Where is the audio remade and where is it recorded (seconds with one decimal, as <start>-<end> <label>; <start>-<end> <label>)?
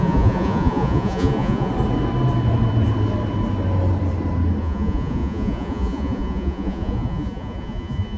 0.0-1.7 remade; 1.7-4.6 recorded; 4.6-8.2 remade